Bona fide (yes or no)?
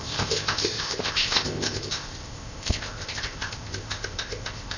no